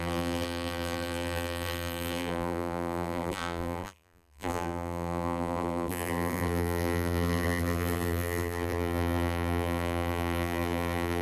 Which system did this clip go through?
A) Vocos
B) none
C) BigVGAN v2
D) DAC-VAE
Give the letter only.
C